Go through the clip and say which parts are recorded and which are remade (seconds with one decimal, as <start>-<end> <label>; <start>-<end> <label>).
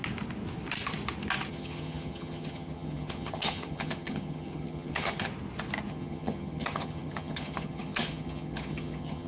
0.0-1.5 recorded; 1.5-5.3 remade; 5.3-5.9 recorded; 5.9-9.3 remade